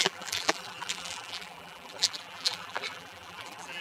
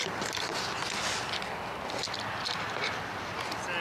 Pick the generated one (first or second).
first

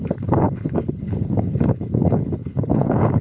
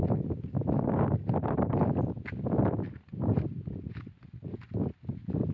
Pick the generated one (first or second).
first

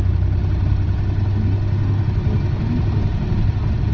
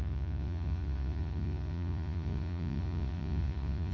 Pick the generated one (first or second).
second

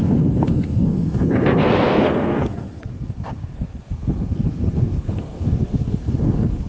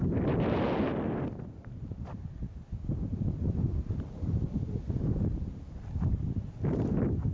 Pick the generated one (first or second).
first